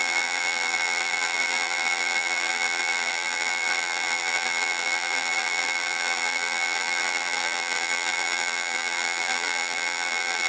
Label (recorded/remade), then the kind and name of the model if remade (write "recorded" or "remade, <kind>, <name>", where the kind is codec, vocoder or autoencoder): remade, vocoder, BigVGAN v2